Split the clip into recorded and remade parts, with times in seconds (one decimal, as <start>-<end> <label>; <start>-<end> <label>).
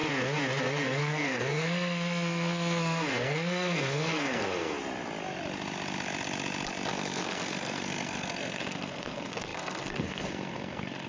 0.0-0.6 recorded; 0.6-4.8 remade; 4.8-6.9 recorded; 6.9-11.1 remade